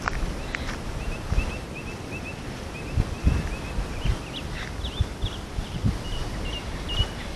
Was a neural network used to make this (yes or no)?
no